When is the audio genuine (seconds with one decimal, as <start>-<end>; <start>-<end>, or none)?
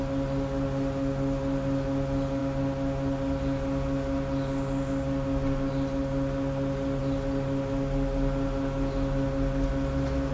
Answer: 0.0-10.3